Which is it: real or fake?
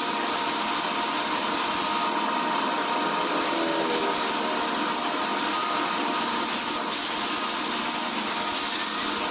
real